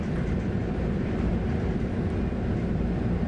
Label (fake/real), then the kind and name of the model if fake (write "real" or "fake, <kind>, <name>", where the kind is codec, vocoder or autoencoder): fake, vocoder, BigVGAN v2